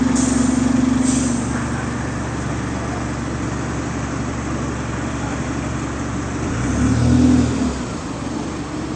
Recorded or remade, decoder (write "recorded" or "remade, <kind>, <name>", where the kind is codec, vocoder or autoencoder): recorded